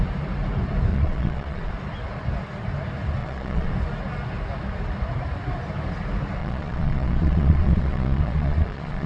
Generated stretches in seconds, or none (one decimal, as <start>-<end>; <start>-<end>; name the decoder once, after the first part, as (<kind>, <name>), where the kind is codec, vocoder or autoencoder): 0.9-1.7 (vocoder, Vocos); 3.2-3.7; 6.4-9.1